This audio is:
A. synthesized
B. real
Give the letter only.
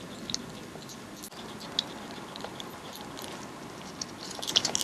B